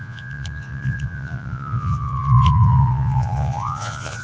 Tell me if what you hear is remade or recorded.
remade